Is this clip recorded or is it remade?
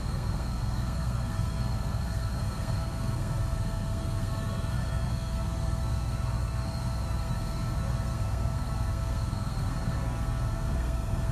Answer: remade